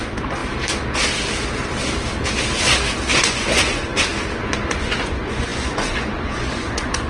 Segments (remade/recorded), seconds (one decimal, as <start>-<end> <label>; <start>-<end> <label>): 0.0-0.4 remade; 0.4-3.1 recorded; 3.1-4.1 remade; 4.1-4.7 recorded; 4.7-7.1 remade